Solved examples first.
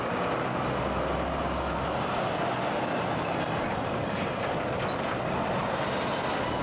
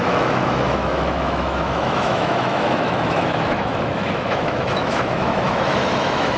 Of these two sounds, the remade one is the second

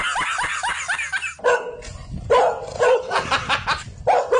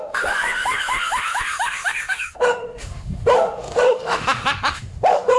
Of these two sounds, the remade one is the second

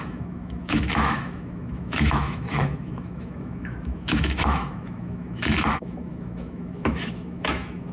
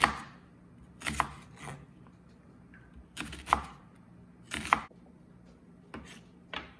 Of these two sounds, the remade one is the first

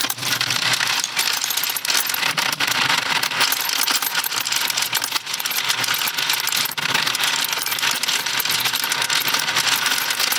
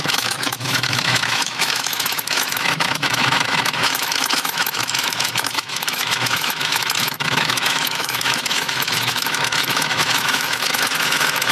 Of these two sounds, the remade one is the second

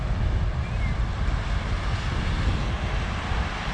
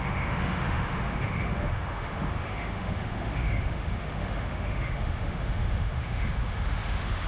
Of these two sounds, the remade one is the second